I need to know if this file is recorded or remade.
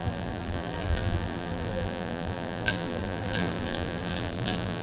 remade